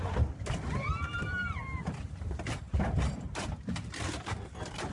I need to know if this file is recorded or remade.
remade